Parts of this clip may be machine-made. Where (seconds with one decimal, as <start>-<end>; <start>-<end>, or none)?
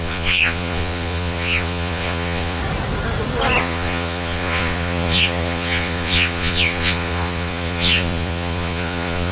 0.0-2.6; 3.6-9.3